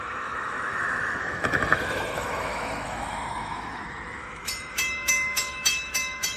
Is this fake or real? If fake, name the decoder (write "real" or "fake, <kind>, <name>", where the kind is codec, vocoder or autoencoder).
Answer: fake, autoencoder, DAC-VAE